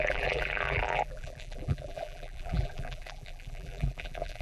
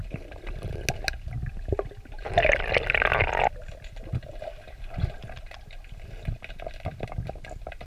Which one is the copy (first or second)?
first